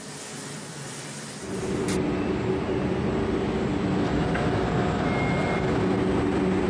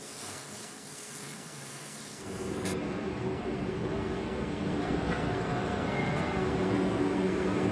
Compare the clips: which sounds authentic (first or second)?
first